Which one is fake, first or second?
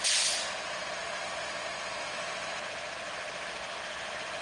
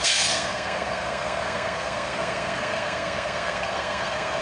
second